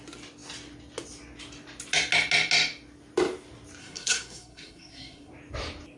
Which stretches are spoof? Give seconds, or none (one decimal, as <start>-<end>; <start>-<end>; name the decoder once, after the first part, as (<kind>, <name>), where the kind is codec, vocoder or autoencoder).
3.8-5.3 (codec, SNAC)

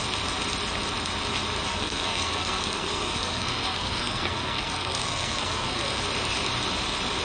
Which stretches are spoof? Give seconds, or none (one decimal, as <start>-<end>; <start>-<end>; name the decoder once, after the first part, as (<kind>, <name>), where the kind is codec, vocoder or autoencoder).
1.7-6.0 (codec, SNAC)

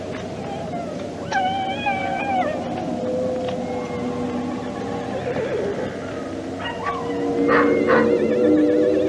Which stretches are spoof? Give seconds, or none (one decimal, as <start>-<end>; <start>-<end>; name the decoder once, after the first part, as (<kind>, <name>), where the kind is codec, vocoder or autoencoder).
none

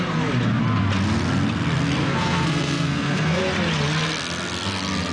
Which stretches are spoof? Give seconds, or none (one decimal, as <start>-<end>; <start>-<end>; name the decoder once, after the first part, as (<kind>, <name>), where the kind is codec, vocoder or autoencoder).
2.0-3.4 (codec, SNAC)

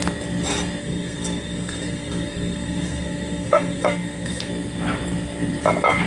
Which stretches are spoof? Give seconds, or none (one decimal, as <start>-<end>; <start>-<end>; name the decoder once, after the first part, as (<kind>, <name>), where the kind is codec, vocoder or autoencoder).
0.8-4.5 (codec, SNAC)

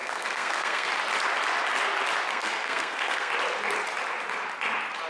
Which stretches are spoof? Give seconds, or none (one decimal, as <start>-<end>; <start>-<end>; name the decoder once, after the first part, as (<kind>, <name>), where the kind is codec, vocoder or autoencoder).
0.0-0.9 (codec, SNAC); 2.3-3.3

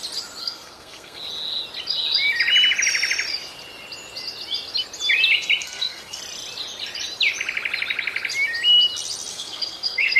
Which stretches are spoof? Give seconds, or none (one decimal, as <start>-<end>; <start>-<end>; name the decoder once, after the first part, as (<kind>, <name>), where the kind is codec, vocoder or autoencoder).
0.4-1.2 (codec, SNAC); 5.6-6.2; 9.3-10.2